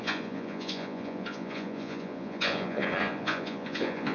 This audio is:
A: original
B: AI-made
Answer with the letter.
B